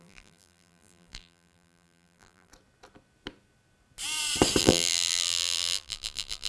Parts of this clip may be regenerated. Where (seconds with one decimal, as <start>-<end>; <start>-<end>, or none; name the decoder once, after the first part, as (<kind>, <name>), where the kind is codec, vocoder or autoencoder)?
0.0-2.5 (vocoder, BigVGAN v2); 4.6-6.5